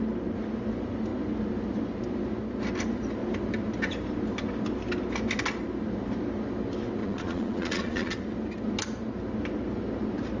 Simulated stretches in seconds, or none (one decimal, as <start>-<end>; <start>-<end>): 7.0-8.1

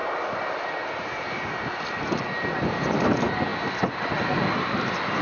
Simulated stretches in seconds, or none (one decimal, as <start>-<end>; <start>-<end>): none

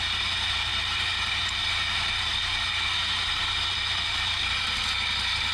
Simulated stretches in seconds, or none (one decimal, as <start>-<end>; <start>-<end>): 3.4-4.4

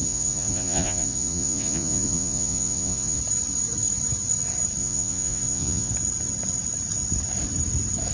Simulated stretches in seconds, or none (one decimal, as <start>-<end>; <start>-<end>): 0.0-3.2; 4.8-5.9

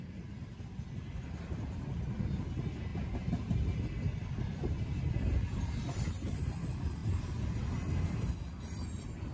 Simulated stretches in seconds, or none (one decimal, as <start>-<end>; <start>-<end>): none

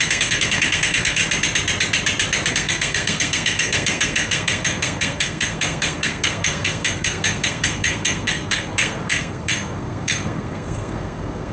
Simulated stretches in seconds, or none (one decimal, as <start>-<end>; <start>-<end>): 0.0-1.2; 2.5-11.5

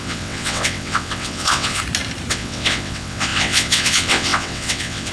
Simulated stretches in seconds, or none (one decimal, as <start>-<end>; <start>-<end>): 0.0-1.8; 2.3-5.1

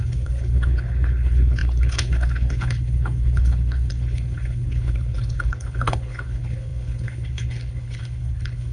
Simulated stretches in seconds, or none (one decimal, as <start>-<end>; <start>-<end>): 0.0-8.7